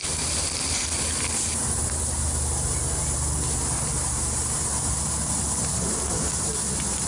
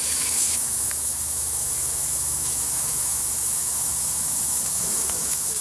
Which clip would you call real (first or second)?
first